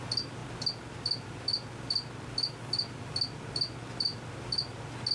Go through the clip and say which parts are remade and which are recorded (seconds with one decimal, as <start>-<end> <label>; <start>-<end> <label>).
0.0-5.1 recorded

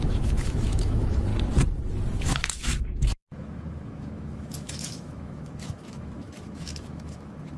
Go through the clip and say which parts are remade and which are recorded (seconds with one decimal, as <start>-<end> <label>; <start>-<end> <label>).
0.0-1.3 remade; 1.3-2.2 recorded; 2.2-7.6 remade

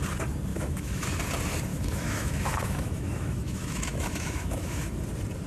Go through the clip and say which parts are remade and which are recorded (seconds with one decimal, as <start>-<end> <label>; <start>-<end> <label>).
0.0-0.5 recorded; 0.5-1.2 remade; 1.2-1.7 recorded; 1.7-5.0 remade; 5.0-5.5 recorded

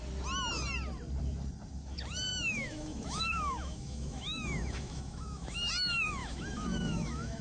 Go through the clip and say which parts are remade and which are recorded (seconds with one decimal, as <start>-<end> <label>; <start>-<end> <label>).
0.0-2.3 recorded; 2.3-5.7 remade; 5.7-6.2 recorded; 6.2-7.4 remade

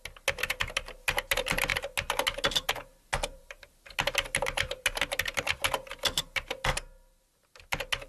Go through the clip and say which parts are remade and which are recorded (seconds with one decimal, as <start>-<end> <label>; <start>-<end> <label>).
0.0-8.1 recorded